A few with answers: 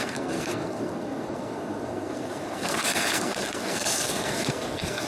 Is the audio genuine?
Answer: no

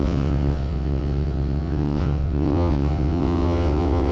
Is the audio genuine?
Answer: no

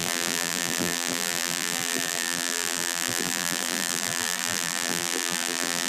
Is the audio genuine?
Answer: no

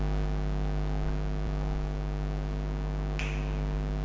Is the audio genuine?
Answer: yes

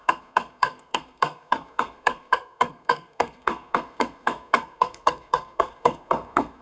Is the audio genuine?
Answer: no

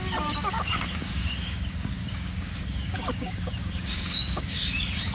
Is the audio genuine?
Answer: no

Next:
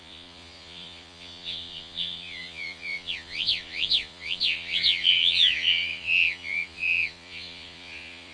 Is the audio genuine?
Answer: no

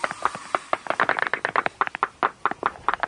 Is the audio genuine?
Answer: yes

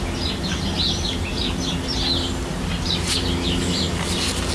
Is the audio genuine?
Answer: yes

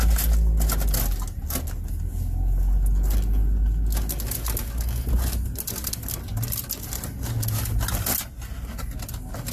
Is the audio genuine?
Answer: yes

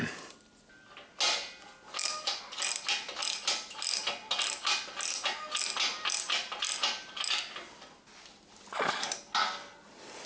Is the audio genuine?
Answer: yes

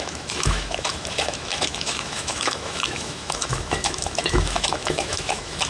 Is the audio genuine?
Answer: no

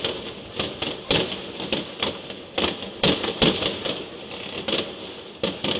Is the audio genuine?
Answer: yes